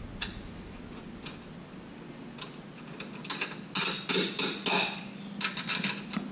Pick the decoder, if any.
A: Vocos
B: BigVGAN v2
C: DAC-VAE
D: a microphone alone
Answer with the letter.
D